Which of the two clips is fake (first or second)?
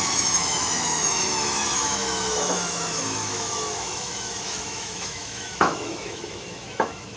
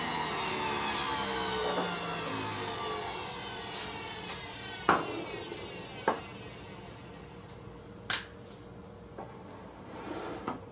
first